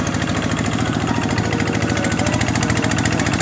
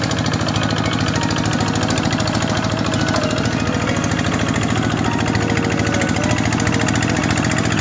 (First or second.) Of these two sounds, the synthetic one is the first